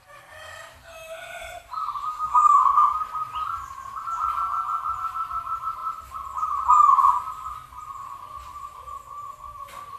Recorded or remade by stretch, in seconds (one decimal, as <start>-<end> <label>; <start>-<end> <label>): 0.0-2.1 recorded; 2.1-3.0 remade; 3.0-10.0 recorded